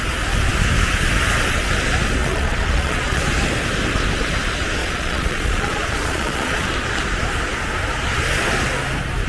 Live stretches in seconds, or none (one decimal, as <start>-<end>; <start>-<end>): 0.0-2.2; 3.2-4.8; 6.7-9.3